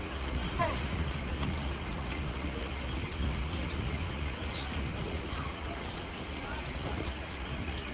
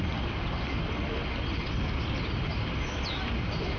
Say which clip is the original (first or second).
second